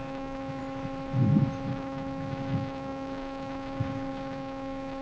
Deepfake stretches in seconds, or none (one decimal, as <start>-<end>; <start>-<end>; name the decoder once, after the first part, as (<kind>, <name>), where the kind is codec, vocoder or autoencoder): 0.0-0.6 (codec, DAC); 1.7-5.0